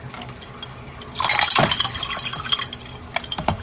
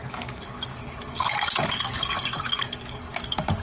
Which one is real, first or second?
first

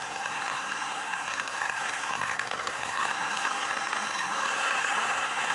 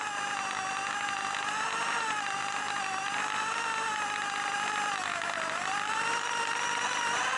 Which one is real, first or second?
second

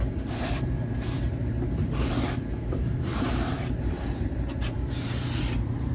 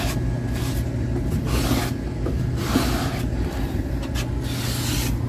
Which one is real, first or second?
second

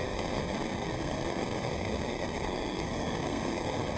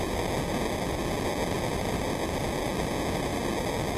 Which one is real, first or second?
second